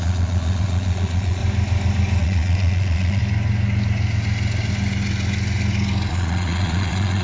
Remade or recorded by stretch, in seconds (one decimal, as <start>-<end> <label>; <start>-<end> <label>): 0.0-1.4 remade; 1.4-2.2 recorded; 2.2-3.2 remade; 3.2-6.1 recorded; 6.1-7.2 remade